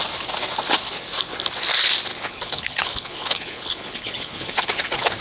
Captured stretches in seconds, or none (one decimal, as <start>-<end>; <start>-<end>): 0.0-2.1